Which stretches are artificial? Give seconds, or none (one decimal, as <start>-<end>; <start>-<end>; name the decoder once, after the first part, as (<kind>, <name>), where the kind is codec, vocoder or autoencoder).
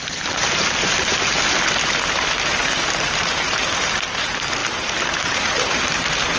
0.0-6.4 (vocoder, BigVGAN v2)